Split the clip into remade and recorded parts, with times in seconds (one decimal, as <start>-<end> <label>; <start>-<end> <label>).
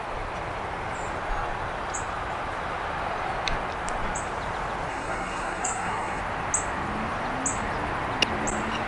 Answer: 0.0-4.9 recorded; 4.9-6.2 remade; 6.2-8.9 recorded